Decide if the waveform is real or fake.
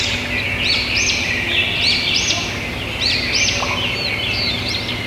real